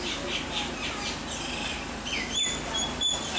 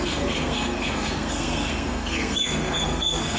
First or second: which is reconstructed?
second